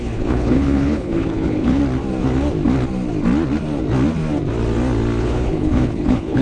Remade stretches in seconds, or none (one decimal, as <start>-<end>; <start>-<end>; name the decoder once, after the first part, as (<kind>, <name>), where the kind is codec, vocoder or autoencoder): 0.0-1.8 (codec, HILCodec); 5.2-6.4

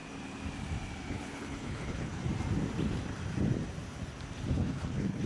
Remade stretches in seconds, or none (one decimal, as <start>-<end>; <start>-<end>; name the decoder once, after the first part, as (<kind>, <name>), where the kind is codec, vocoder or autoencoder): 1.1-2.2 (codec, HILCodec); 4.5-5.3

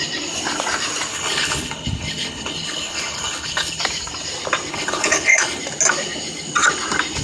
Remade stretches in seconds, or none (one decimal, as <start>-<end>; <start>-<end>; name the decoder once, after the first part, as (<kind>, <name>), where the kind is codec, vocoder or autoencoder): 1.1-3.8 (codec, HILCodec); 4.7-5.6

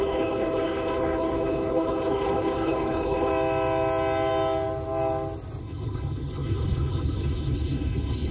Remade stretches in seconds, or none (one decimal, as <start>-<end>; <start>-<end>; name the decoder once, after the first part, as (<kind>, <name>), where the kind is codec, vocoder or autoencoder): 0.0-3.3 (codec, HILCodec); 5.6-8.3

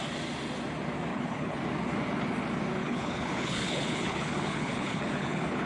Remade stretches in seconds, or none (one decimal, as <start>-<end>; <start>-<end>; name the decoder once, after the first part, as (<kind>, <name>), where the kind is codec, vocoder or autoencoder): 1.1-1.6 (codec, HILCodec); 2.8-5.7

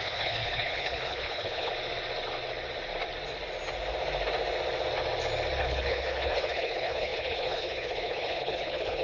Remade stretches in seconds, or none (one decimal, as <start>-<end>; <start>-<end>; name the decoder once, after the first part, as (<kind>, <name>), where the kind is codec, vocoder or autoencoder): 0.0-1.7 (codec, HILCodec); 5.6-9.0